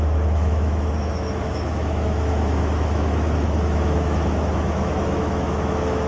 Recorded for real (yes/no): no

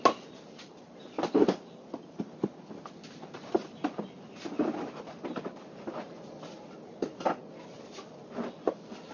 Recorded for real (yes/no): yes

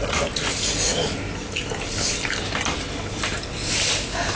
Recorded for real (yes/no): yes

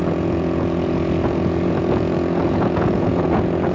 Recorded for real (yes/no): no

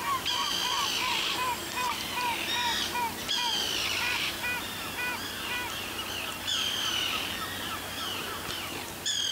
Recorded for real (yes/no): yes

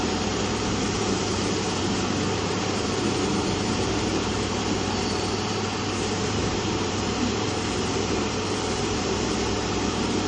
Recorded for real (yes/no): no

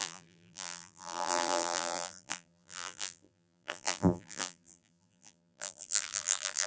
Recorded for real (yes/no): no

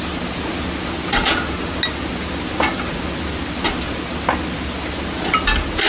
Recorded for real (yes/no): yes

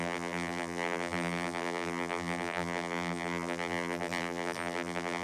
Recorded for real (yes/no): no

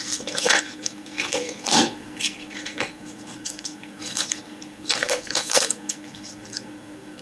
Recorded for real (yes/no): no